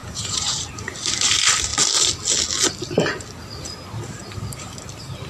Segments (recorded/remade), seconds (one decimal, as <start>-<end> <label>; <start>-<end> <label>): 0.0-0.6 remade; 0.6-5.3 recorded